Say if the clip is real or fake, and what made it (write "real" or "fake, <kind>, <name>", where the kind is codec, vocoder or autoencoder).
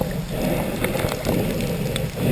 real